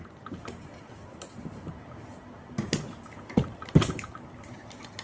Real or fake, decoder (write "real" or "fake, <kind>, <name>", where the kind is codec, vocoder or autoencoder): real